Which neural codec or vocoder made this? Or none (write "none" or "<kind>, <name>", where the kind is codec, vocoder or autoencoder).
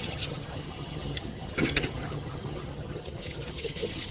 vocoder, HiFi-GAN